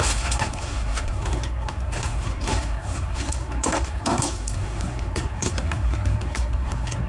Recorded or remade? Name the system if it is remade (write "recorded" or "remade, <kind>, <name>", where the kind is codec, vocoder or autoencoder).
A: remade, codec, SNAC